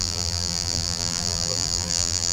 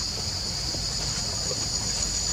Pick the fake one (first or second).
first